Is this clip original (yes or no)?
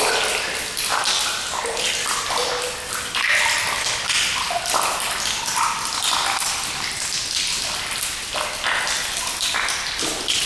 yes